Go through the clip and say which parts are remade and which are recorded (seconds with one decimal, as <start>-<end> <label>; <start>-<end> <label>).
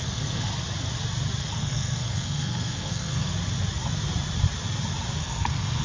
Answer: 0.0-0.5 remade; 0.5-1.4 recorded; 1.4-3.3 remade; 3.3-5.2 recorded; 5.2-5.8 remade